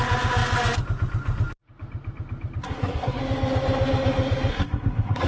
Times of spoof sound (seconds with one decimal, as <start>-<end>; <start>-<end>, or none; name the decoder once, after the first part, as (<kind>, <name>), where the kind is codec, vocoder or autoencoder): 2.6-3.2 (codec, SNAC); 4.5-5.3